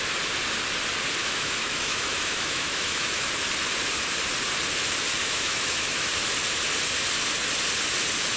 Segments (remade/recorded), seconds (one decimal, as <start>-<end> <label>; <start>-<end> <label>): 0.0-1.2 recorded; 1.2-3.3 remade; 3.3-5.2 recorded; 5.2-6.1 remade; 6.1-8.4 recorded